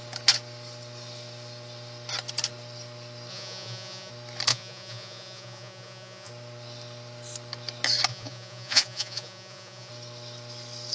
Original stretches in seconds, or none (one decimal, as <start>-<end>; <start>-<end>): 0.0-3.3; 4.1-4.5; 6.3-8.1; 9.9-10.9